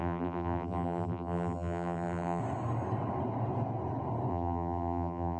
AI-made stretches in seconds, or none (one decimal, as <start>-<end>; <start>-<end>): 0.0-2.4; 4.3-5.4